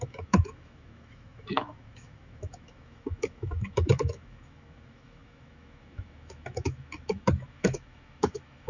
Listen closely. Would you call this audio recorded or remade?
remade